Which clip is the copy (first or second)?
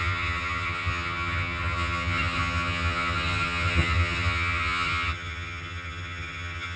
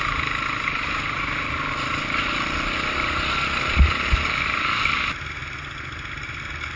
first